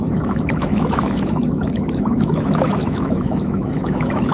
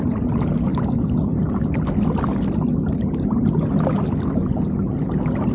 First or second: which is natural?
second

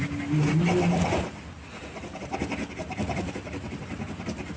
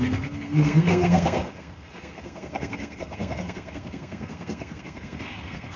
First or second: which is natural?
first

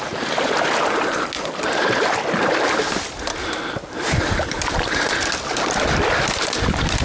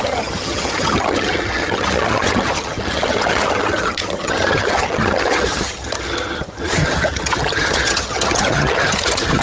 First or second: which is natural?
first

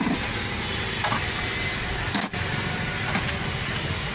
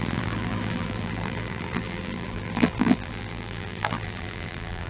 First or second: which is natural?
first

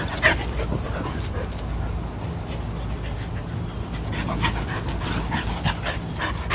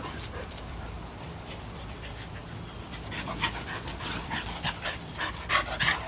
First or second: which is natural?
first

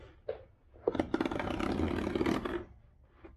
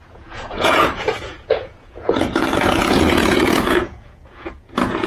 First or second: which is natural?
first